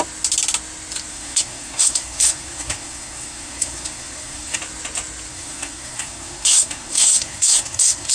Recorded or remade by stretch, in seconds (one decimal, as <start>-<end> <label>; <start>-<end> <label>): 0.0-1.1 recorded; 1.1-4.6 remade; 4.6-5.3 recorded; 5.3-8.1 remade